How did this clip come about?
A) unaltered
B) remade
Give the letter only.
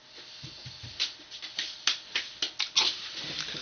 A